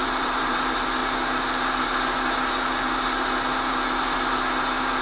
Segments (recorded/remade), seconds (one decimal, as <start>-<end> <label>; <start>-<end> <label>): 0.0-0.6 remade; 0.6-5.0 recorded